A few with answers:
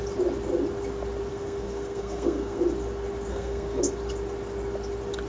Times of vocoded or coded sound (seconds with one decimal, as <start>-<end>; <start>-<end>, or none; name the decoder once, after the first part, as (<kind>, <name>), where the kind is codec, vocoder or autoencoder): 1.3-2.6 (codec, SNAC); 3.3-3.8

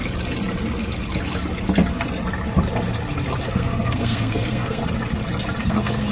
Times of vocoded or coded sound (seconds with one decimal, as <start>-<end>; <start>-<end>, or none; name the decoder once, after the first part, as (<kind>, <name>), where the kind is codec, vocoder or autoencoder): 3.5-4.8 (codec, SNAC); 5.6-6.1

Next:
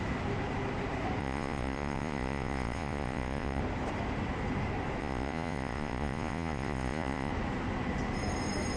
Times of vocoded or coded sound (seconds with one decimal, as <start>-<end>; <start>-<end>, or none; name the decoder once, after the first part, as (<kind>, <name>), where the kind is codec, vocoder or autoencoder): 1.2-3.6 (vocoder, Vocos); 5.0-7.3

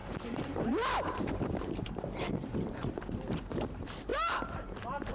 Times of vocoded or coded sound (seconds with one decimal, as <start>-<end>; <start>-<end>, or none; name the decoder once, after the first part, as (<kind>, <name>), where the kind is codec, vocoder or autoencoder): 0.0-5.1 (vocoder, BigVGAN v2)